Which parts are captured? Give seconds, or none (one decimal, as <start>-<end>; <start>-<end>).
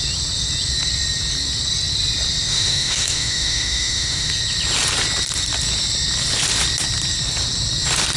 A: 0.0-2.5; 4.3-8.2